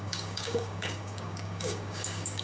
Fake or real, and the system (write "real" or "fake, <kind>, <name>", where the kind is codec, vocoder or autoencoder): fake, codec, DAC